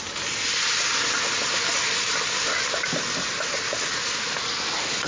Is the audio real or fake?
real